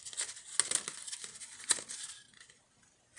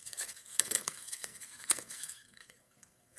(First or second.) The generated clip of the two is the second